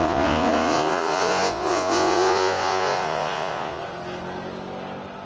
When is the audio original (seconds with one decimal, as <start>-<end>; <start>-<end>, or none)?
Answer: 3.8-5.3

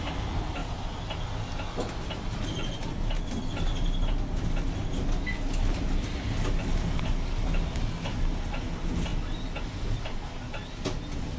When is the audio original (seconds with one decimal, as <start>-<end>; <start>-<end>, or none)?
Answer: 0.0-11.4

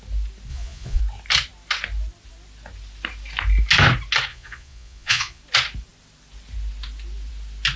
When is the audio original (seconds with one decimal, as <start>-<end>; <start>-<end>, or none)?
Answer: 0.0-0.5; 1.0-4.3; 5.4-7.8

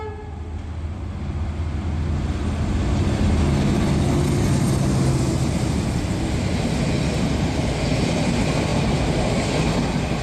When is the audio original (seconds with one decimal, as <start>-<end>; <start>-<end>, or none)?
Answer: 0.0-10.2

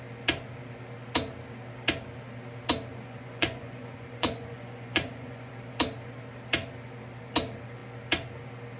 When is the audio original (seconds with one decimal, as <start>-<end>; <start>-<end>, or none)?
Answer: 0.0-2.9; 5.5-8.8

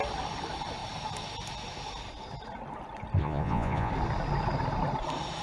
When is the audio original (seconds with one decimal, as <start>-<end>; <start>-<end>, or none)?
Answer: 0.0-3.2; 3.9-5.4